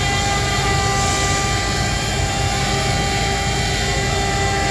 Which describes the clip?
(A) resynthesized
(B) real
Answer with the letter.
B